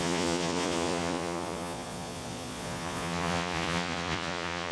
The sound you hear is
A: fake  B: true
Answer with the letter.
A